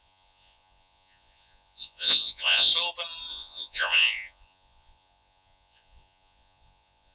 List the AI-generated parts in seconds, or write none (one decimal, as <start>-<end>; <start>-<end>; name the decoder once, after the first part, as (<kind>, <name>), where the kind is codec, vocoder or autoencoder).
0.0-2.7 (vocoder, Vocos); 3.3-7.1